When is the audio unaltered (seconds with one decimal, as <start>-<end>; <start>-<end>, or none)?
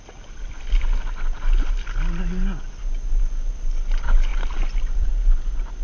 0.0-4.3; 5.1-5.8